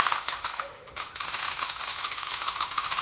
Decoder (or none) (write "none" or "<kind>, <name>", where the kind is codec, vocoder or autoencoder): autoencoder, DAC-VAE